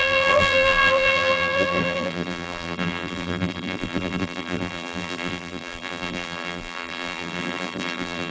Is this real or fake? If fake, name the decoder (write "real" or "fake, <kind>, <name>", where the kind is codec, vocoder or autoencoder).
fake, vocoder, BigVGAN v2